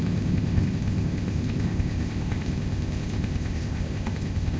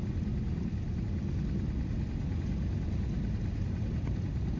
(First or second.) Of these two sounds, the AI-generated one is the first